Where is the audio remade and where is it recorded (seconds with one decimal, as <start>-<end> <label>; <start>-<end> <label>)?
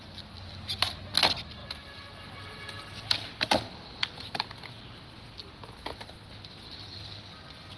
0.0-7.8 recorded